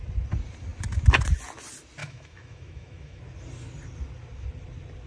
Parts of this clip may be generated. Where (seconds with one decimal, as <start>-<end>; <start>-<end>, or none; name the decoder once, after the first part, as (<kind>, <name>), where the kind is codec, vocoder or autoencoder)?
2.0-3.2 (autoencoder, DAC-VAE)